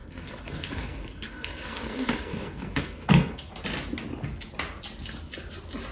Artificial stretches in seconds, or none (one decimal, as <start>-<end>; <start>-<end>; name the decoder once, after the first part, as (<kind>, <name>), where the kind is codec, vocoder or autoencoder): 0.0-3.5 (codec, SNAC)